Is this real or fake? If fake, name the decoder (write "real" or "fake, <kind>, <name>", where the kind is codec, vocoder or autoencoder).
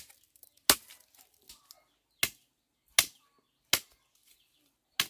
real